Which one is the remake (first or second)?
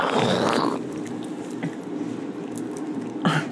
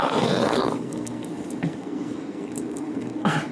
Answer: second